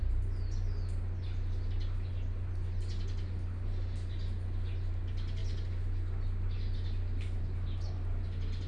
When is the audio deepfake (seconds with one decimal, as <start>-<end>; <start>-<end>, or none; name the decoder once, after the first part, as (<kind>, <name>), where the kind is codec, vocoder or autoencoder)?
none